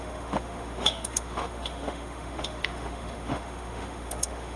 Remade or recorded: remade